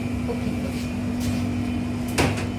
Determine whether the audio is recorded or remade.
recorded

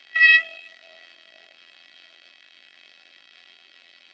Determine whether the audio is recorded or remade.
remade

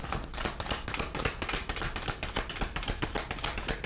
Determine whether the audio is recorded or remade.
recorded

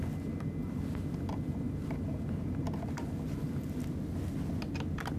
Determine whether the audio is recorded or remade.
recorded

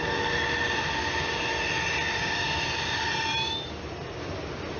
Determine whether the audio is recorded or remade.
recorded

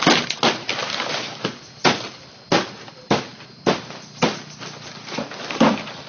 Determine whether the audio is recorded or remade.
recorded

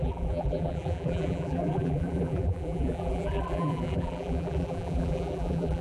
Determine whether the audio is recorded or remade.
remade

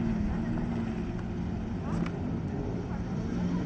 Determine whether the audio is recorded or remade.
recorded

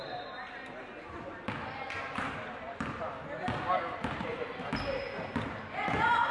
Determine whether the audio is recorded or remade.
recorded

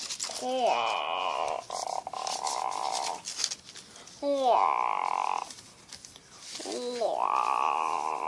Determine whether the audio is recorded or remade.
recorded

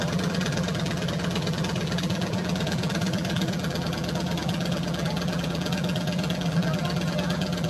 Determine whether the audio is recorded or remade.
remade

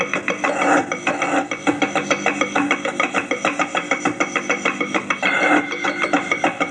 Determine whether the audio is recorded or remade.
recorded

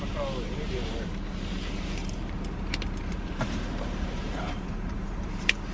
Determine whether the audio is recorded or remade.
remade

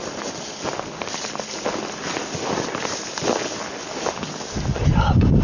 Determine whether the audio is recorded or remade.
recorded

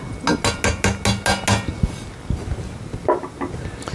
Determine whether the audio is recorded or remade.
recorded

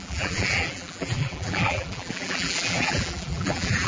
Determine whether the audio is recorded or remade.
remade